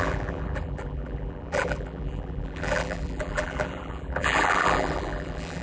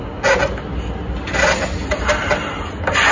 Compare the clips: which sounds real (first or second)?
second